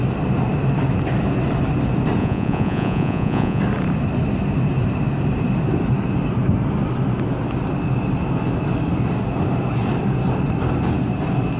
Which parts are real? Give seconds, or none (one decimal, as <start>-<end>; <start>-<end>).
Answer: 0.0-2.2; 3.6-11.6